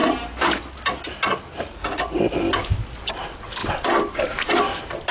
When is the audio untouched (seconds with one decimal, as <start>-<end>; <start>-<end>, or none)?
0.0-5.1